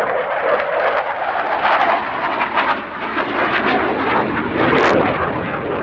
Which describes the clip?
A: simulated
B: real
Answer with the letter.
B